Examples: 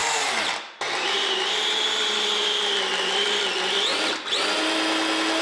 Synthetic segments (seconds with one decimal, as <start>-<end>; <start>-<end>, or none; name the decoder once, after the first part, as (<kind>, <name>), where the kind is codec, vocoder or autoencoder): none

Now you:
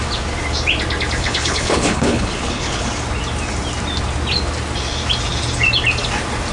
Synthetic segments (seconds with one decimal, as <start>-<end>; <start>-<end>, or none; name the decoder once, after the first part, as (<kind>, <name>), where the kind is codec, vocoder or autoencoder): 1.2-2.9 (codec, HILCodec)

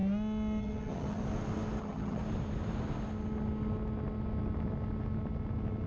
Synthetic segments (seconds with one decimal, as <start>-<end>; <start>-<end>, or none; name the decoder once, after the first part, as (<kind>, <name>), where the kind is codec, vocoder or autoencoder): 0.6-1.2 (vocoder, HiFi-GAN); 1.8-2.2

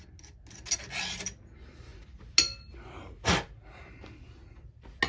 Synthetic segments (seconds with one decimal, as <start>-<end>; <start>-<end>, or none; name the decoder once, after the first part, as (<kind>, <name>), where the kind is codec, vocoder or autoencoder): none

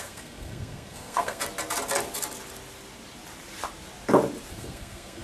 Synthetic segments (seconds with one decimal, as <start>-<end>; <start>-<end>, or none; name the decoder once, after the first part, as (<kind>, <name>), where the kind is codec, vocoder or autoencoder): 0.0-1.4 (codec, SNAC); 4.5-5.2